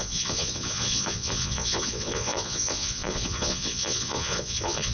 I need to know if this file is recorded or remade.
remade